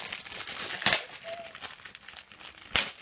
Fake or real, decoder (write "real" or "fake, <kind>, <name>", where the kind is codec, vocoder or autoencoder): real